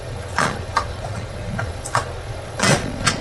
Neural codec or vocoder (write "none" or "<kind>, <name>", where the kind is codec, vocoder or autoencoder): vocoder, Vocos